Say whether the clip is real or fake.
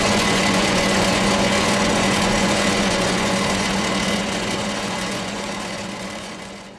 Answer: fake